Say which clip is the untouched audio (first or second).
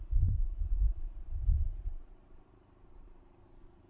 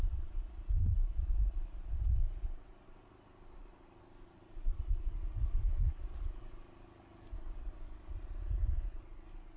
second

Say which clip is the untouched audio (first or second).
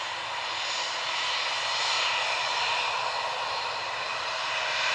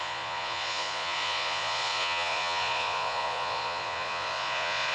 first